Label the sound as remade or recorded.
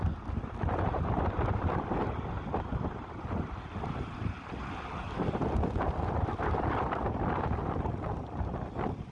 recorded